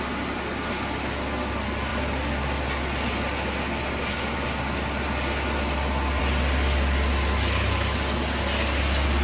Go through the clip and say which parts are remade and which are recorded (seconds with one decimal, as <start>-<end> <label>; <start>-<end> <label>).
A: 0.0-9.2 recorded

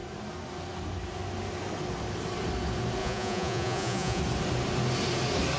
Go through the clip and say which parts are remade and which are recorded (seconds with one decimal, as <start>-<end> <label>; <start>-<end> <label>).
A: 0.0-3.0 recorded; 3.0-4.2 remade; 4.2-5.6 recorded

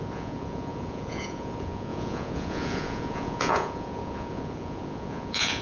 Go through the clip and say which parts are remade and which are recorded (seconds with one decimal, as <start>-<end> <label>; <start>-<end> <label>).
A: 0.0-5.6 remade